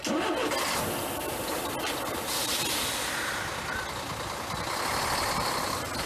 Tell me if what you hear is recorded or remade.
recorded